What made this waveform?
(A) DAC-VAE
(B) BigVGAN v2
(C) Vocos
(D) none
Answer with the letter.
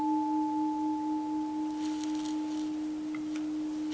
D